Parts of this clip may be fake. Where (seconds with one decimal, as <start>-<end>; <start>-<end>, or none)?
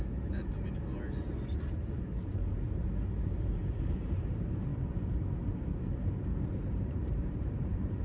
0.0-0.4; 1.7-4.7; 6.5-8.0